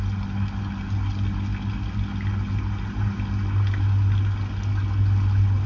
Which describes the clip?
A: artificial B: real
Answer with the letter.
B